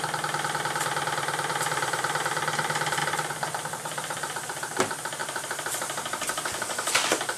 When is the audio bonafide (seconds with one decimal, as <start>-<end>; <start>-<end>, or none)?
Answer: 0.0-7.4

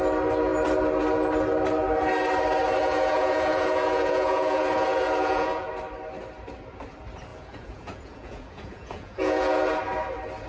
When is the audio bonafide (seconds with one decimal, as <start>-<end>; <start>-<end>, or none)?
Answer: 0.0-2.8; 5.7-7.3; 9.8-10.5

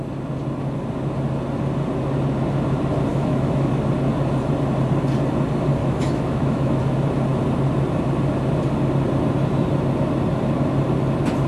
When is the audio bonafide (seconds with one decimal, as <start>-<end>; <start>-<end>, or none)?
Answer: 0.0-3.1; 3.7-5.8; 6.8-11.5

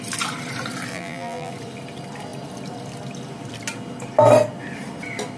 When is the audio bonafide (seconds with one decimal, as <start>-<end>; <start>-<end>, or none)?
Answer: 0.0-0.9; 1.5-5.4

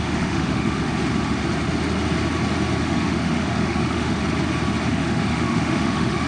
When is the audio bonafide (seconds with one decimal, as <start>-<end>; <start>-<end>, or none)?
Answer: 0.9-2.8; 4.2-4.9

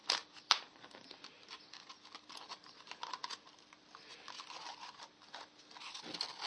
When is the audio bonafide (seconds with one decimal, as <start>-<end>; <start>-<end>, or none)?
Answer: 0.0-6.5